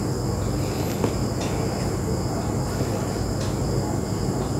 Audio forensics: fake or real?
real